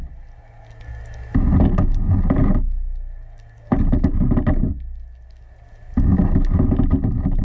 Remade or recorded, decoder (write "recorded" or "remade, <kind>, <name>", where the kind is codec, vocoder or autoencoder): recorded